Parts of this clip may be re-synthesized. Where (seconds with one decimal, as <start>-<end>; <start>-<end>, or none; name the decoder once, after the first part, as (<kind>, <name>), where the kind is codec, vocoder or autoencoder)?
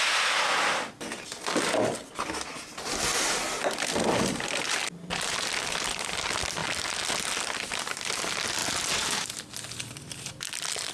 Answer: none